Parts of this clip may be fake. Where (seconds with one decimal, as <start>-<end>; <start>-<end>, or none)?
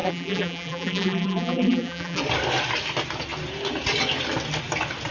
0.0-2.2